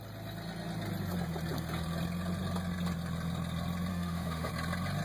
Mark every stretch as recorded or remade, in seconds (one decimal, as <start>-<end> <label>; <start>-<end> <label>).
0.0-3.9 recorded; 3.9-4.5 remade; 4.5-5.0 recorded